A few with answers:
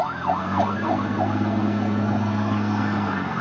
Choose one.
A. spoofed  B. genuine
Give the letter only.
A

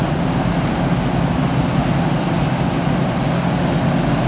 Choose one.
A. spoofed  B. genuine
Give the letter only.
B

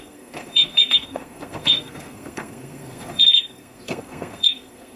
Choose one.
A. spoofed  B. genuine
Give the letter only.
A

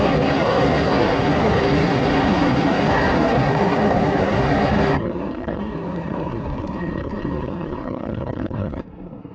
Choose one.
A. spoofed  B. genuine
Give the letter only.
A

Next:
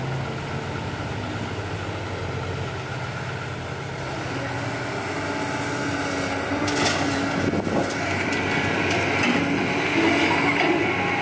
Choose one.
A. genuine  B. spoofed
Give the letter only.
A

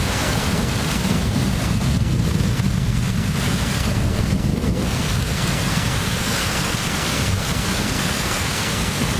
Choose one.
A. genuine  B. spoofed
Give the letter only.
B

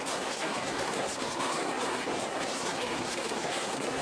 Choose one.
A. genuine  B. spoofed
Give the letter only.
B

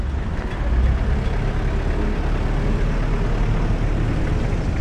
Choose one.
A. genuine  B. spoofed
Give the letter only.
A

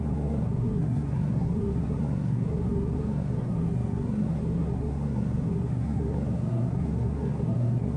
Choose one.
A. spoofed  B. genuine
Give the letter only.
A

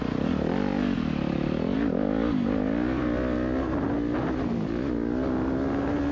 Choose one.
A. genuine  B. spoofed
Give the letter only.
A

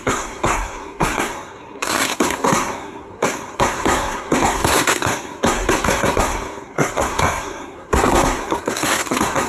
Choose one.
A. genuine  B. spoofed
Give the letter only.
B